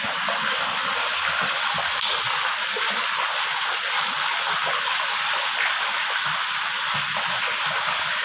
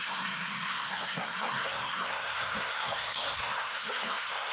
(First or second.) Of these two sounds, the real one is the first